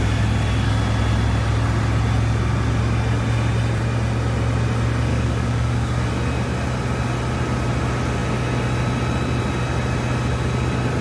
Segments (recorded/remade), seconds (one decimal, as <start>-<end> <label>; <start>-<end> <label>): 0.0-5.1 recorded; 5.1-6.1 remade; 6.1-11.0 recorded